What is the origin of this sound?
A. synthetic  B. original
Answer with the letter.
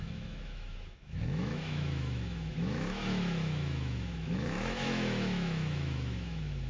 A